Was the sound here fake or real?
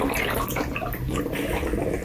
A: real